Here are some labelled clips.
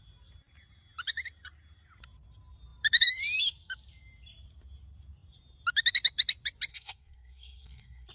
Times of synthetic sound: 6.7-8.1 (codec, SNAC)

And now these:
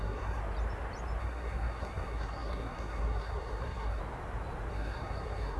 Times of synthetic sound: 0.0-0.4 (codec, SNAC); 1.2-4.0; 4.7-5.6

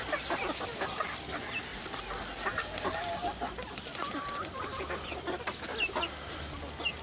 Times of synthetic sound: none

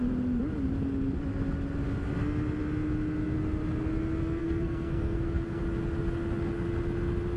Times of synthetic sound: 4.4-5.6 (codec, SNAC)

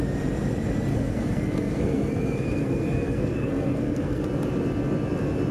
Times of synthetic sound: 0.9-4.2 (codec, SNAC)

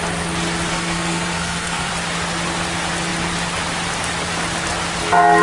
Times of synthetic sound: 0.7-1.9 (codec, SNAC)

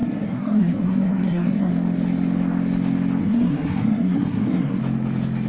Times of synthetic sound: 0.0-1.7 (codec, SNAC); 3.2-4.8